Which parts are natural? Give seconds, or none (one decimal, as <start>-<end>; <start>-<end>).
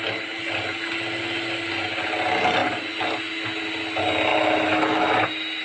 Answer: 0.0-4.3